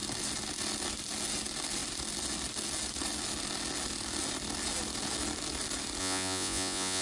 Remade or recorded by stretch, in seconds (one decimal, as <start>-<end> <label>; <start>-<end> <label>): 0.0-6.0 recorded; 6.0-7.0 remade